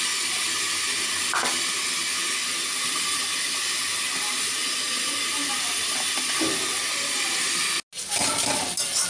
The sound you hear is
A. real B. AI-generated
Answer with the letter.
A